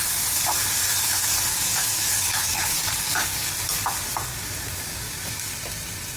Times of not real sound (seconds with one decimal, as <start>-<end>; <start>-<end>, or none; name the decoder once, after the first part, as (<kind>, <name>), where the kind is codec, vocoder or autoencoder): 1.5-3.5 (codec, DAC); 4.3-5.5